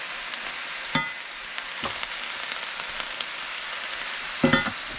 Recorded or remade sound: recorded